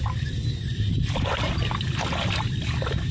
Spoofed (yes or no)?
no